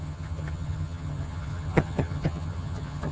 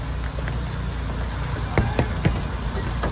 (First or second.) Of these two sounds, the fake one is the first